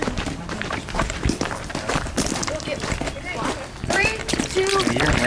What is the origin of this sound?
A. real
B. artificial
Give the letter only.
A